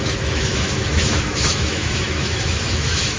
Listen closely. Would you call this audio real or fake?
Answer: fake